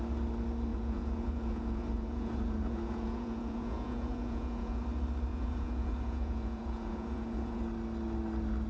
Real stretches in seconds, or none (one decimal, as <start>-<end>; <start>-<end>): 0.0-0.7; 4.8-5.3; 7.6-8.7

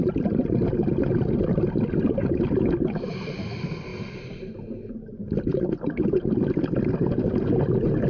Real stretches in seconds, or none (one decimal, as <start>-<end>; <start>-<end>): 0.0-8.1

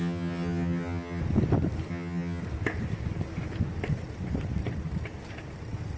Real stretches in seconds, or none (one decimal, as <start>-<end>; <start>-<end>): 1.2-1.9; 2.4-6.0

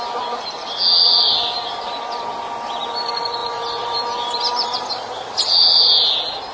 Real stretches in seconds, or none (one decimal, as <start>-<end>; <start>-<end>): 0.0-3.4; 5.4-6.5

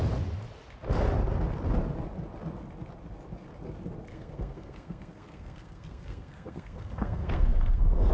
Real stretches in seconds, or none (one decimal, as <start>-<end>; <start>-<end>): 0.0-4.1